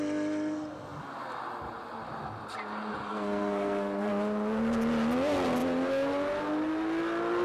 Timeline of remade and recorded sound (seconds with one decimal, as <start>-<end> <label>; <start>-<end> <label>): 0.0-3.1 recorded; 3.1-4.1 remade; 4.1-7.4 recorded